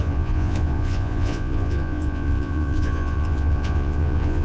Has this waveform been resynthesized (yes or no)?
yes